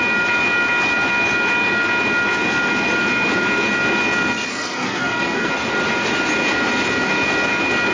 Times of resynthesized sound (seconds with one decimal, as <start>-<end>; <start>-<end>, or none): 4.5-5.5